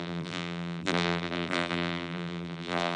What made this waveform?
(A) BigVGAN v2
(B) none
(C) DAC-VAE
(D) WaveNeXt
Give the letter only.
A